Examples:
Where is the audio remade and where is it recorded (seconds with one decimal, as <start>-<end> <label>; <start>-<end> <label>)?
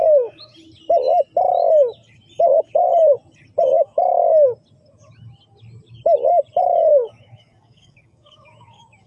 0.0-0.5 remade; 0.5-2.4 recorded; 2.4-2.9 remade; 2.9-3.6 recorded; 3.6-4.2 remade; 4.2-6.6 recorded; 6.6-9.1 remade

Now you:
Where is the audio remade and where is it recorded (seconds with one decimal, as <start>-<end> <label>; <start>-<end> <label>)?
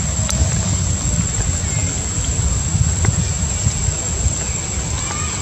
0.0-5.4 recorded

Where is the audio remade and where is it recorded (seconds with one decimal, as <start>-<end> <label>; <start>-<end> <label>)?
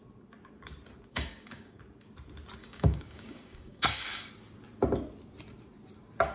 0.0-1.1 recorded; 1.1-1.8 remade; 1.8-2.6 recorded; 2.6-4.3 remade; 4.3-6.3 recorded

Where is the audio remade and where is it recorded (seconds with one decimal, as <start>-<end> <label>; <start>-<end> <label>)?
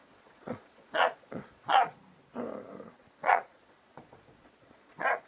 0.0-2.0 remade; 2.0-3.2 recorded; 3.2-5.3 remade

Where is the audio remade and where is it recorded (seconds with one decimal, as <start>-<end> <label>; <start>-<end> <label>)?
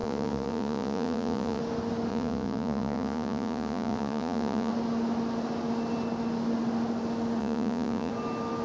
0.0-1.6 remade; 1.6-2.1 recorded; 2.1-4.7 remade; 4.7-7.4 recorded; 7.4-8.1 remade; 8.1-8.6 recorded